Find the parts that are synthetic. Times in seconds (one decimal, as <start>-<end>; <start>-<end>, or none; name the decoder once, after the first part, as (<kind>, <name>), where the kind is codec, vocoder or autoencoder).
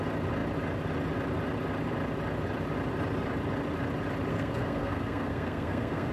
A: 4.3-6.1 (codec, SNAC)